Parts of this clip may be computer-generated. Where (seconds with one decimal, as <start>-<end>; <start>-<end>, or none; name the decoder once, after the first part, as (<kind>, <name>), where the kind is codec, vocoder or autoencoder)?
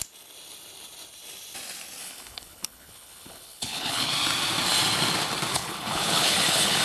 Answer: 2.0-4.1 (codec, HILCodec); 5.5-6.8